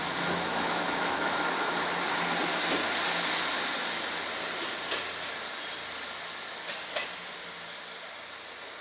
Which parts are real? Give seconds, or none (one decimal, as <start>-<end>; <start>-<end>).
1.9-8.8

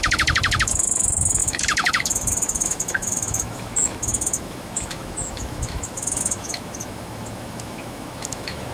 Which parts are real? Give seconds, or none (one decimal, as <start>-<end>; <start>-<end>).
none

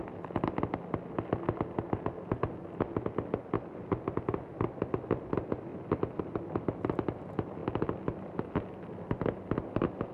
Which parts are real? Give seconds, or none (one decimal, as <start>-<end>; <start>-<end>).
0.0-10.1

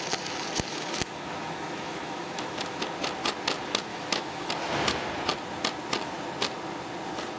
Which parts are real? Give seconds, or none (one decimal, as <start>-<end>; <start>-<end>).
0.0-0.7; 2.8-3.9; 4.5-7.4